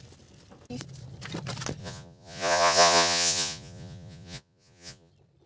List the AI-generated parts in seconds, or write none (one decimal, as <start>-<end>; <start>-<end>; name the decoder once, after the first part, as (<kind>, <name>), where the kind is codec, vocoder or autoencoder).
1.8-5.1 (vocoder, Vocos)